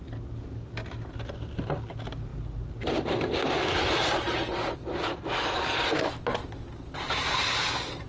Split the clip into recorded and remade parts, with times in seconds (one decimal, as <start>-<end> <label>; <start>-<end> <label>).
0.0-8.1 recorded